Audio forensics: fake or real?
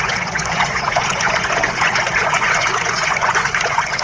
fake